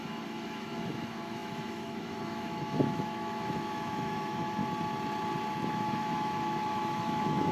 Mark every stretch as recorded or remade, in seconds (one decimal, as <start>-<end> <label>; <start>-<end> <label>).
0.0-4.6 remade; 4.6-5.7 recorded; 5.7-7.5 remade